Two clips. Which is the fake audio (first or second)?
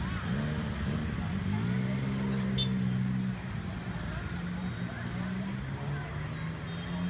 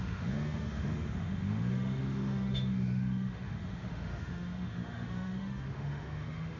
second